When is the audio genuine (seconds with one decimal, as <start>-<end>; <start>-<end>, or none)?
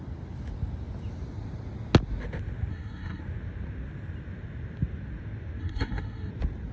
0.0-2.7; 3.2-5.6; 6.3-6.7